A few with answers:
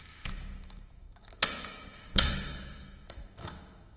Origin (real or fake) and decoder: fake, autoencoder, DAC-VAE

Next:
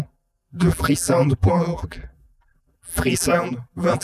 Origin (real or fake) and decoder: fake, vocoder, BigVGAN v2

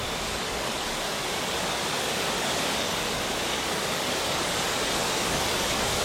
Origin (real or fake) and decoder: fake, codec, DAC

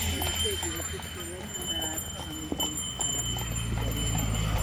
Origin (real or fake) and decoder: real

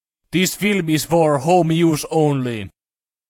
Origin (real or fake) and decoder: fake, vocoder, Vocos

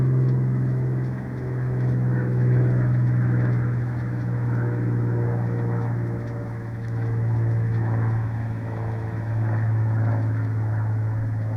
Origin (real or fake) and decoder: fake, autoencoder, DAC-VAE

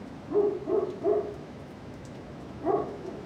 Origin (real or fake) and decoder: fake, autoencoder, DAC-VAE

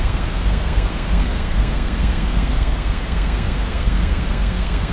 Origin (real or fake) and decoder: fake, codec, SNAC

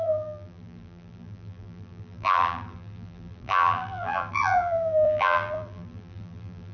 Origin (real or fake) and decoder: fake, vocoder, BigVGAN v2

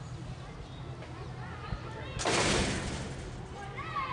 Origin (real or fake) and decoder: real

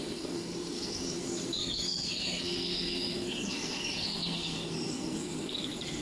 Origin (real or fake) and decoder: fake, codec, SNAC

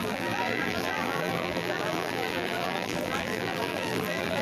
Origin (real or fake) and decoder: fake, vocoder, BigVGAN v2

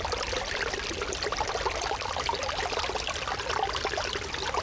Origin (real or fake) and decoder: real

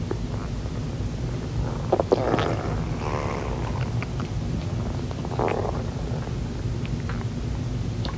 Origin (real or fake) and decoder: real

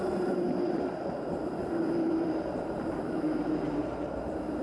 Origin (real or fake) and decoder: fake, vocoder, BigVGAN v2